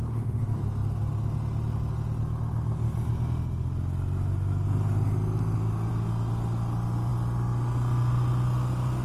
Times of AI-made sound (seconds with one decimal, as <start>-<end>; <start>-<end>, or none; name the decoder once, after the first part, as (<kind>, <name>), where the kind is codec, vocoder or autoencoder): none